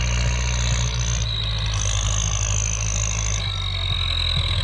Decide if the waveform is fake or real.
real